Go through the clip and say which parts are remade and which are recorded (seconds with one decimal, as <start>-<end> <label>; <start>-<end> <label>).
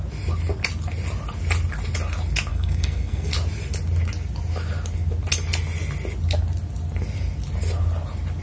0.0-2.5 recorded; 2.5-3.3 remade; 3.3-8.4 recorded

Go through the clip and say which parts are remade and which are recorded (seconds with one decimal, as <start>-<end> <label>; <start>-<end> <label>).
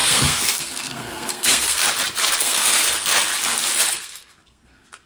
0.0-1.8 remade; 1.8-2.4 recorded; 2.4-3.3 remade; 3.3-3.9 recorded; 3.9-5.1 remade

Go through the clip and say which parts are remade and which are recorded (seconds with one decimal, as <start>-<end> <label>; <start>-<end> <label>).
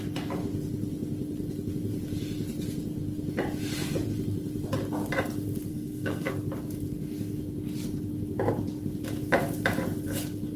0.0-5.7 recorded; 5.7-6.3 remade; 6.3-10.6 recorded